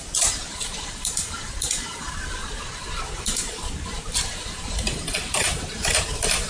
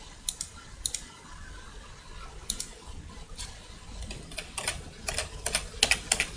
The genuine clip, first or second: second